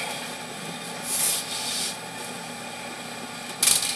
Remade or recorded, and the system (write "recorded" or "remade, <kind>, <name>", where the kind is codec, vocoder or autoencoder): recorded